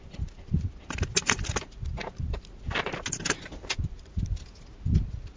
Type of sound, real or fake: real